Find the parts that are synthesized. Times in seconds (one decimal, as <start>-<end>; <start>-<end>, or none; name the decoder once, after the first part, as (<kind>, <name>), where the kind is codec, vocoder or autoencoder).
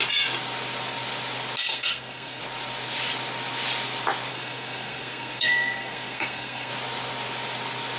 1.6-2.4 (codec, SNAC); 4.3-6.7